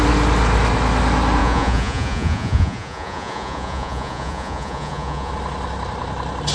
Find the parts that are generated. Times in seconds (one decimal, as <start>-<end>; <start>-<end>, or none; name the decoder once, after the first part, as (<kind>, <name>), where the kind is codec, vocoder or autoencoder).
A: 1.4-5.3 (vocoder, Vocos)